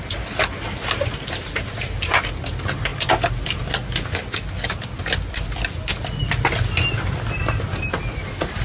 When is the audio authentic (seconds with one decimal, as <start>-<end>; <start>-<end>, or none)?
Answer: 0.0-8.6